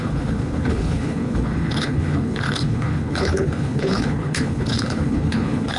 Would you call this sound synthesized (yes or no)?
yes